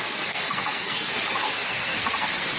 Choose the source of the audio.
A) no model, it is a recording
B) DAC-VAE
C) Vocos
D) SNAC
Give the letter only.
D